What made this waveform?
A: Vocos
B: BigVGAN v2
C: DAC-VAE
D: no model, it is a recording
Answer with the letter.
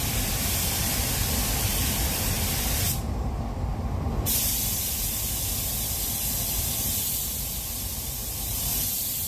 B